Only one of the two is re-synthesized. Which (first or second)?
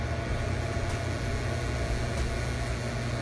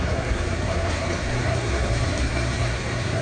second